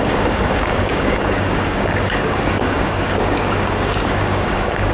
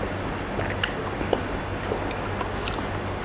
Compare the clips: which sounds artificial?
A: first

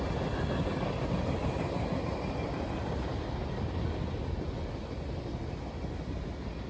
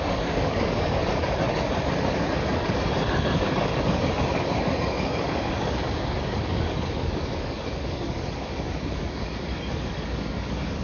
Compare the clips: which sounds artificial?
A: second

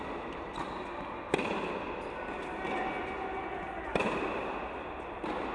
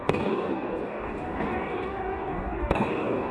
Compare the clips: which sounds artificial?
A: second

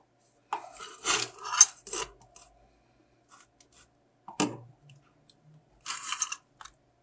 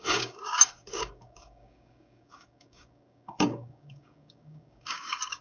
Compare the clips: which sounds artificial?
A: second